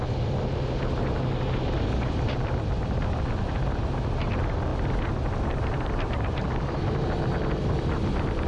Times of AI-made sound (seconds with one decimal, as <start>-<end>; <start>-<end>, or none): none